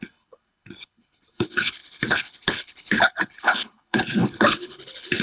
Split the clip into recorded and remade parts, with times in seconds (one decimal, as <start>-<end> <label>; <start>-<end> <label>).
0.0-5.2 remade